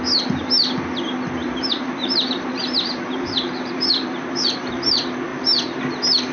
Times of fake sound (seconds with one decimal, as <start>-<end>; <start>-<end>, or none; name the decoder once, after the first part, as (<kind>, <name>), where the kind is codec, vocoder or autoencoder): 1.4-4.8 (vocoder, BigVGAN v2); 5.3-5.8